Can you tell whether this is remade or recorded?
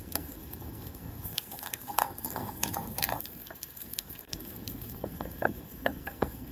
remade